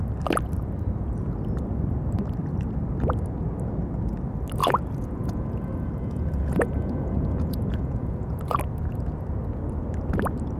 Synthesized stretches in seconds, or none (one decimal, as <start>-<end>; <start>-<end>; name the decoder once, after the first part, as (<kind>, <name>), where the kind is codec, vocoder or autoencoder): 4.6-8.6 (vocoder, Vocos)